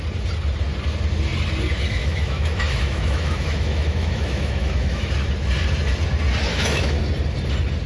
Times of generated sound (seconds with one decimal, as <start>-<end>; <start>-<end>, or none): 2.0-5.1; 6.5-7.0